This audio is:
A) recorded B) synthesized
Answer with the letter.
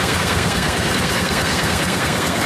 B